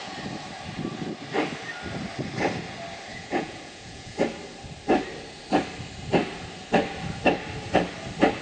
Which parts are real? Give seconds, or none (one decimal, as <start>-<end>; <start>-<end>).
0.0-3.1; 4.2-8.4

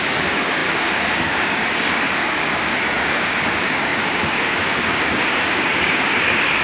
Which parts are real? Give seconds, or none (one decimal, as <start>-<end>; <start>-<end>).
none